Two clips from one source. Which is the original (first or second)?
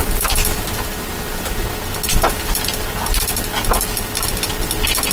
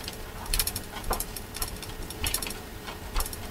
first